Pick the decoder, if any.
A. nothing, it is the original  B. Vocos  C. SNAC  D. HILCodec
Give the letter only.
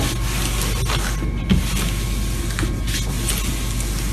A